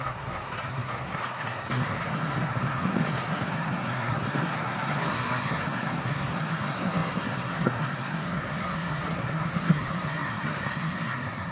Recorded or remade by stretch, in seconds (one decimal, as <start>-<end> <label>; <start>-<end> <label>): 0.0-11.5 remade